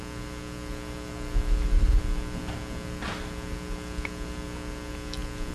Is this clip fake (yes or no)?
no